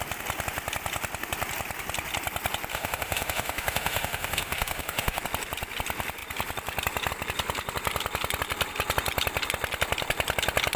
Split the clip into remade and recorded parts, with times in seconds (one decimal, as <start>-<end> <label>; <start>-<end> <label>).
0.0-2.7 recorded; 2.7-5.2 remade; 5.2-10.8 recorded